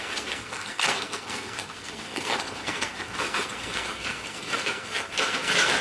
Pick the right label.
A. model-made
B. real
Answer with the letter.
A